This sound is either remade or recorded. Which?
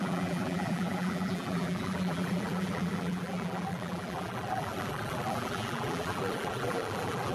remade